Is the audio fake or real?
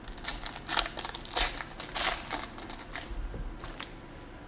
real